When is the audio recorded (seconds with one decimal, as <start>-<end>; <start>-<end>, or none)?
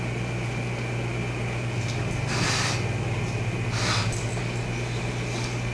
0.0-5.7